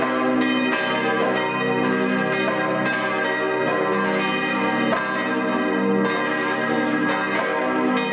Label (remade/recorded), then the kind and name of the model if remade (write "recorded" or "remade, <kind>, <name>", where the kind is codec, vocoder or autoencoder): recorded